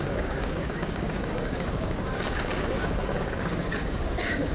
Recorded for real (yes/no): no